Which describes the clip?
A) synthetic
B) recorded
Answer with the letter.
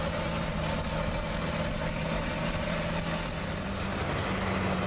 B